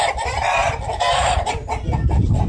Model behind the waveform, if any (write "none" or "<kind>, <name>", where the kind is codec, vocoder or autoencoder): none